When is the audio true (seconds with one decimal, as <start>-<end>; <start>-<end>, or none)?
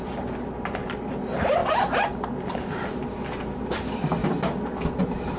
0.0-5.4